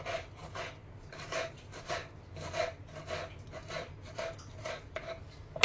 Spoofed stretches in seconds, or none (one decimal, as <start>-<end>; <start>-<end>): none